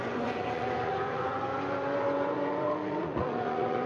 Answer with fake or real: fake